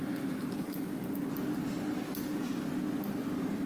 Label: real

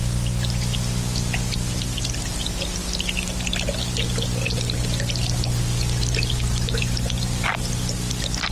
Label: real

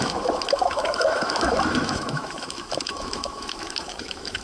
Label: fake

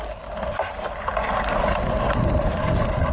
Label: real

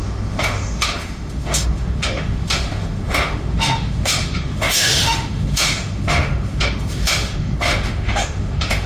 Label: fake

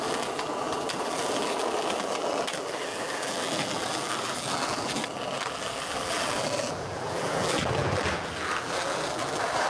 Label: fake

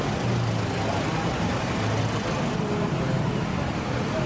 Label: real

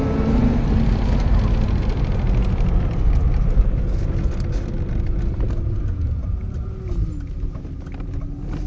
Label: real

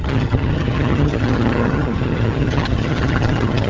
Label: fake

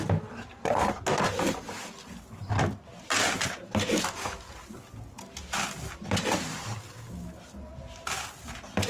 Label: real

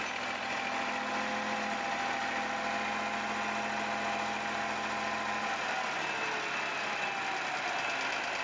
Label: real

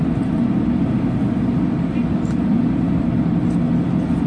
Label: real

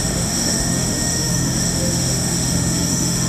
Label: fake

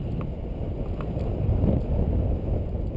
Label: real